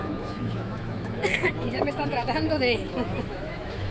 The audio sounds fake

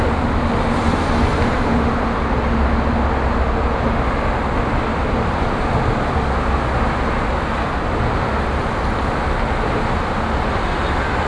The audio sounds real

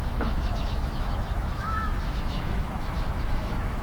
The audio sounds fake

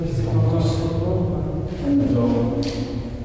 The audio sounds real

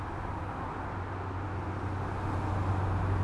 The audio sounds real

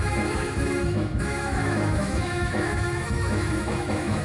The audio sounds fake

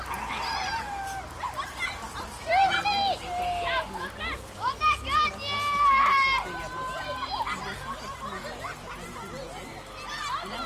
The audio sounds real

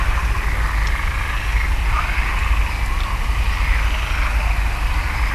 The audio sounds real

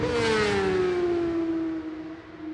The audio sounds real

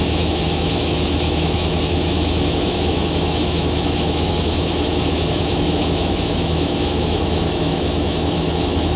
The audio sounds fake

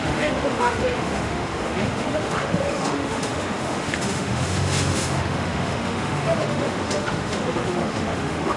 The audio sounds fake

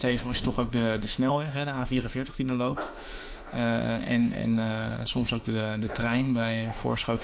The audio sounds fake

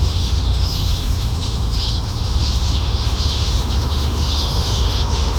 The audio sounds fake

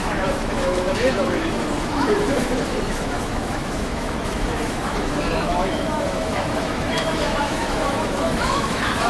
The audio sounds fake